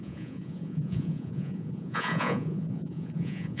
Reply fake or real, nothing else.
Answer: fake